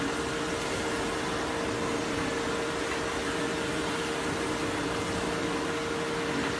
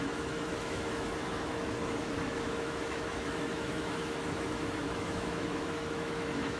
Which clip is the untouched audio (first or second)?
first